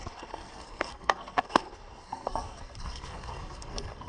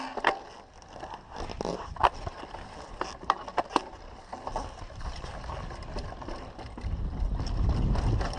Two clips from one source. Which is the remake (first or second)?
first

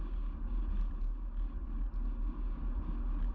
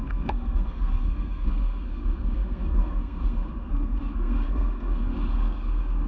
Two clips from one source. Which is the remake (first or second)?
second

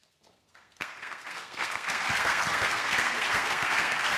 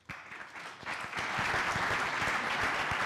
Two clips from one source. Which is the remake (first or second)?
first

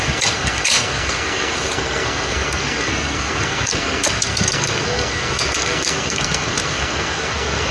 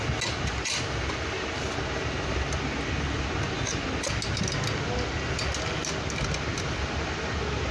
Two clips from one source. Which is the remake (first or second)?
first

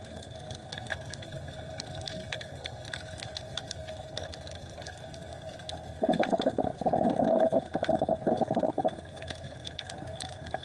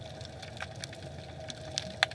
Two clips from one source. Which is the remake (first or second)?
first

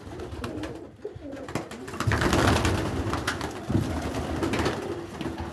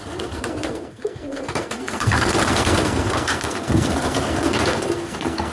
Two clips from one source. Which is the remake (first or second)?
second